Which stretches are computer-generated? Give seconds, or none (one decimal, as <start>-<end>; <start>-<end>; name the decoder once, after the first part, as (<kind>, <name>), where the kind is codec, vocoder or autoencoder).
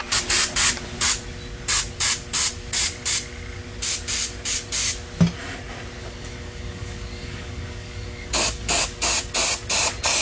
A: 6.0-8.8 (codec, DAC)